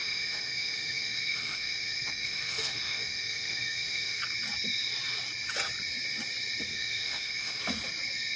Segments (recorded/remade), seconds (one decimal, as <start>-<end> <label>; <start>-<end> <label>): 0.0-4.2 remade; 4.2-6.7 recorded; 6.7-7.6 remade; 7.6-8.4 recorded